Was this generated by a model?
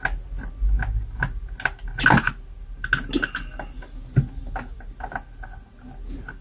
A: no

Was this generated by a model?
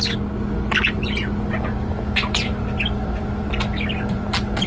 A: no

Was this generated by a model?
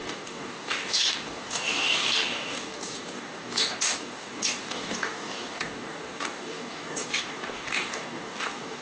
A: yes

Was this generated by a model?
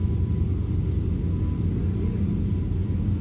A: no